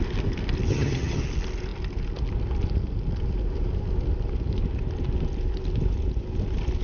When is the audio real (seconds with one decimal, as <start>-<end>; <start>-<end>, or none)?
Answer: 0.0-0.7; 1.2-6.8